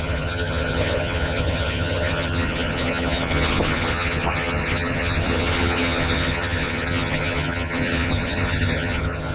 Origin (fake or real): fake